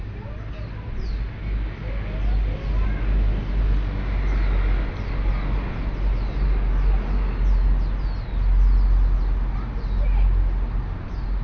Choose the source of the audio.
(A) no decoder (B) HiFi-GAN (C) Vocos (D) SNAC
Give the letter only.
A